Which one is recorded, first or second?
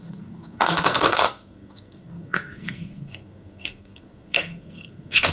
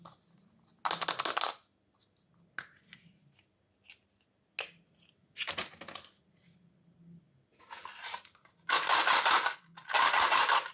second